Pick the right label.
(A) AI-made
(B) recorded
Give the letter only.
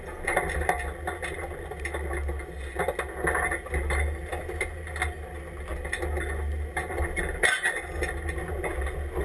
B